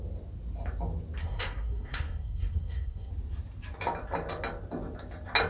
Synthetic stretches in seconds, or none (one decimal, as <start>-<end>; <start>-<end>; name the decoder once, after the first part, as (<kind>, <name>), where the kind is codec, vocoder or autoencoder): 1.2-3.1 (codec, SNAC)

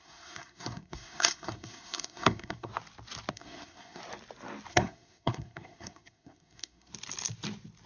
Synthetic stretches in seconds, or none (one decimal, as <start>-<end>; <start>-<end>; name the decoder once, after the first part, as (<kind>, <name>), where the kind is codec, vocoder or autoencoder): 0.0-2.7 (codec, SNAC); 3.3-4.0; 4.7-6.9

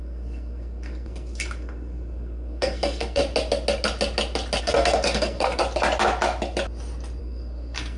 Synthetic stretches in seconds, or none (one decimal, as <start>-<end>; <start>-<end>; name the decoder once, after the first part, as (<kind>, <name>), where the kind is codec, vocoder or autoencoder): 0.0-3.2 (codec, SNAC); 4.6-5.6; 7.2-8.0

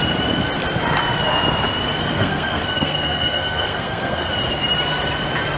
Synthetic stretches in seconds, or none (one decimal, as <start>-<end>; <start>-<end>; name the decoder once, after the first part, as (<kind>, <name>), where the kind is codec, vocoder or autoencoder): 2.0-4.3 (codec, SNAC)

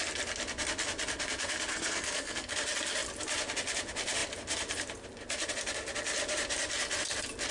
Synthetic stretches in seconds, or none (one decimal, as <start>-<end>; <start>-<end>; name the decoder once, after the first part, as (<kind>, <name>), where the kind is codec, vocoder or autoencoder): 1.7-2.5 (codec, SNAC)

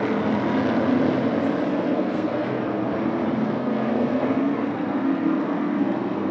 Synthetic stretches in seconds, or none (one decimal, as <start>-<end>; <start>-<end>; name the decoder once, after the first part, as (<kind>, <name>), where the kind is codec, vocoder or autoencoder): 1.7-2.6 (codec, SNAC); 3.4-6.3

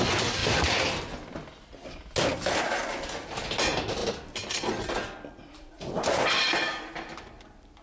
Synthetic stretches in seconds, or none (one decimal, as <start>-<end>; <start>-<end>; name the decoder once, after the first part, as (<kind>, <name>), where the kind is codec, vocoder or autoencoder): none

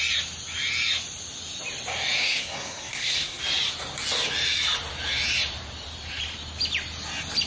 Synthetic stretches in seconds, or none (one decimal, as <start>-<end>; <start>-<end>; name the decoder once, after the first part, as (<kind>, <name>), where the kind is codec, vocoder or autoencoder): 2.2-3.4 (codec, SNAC)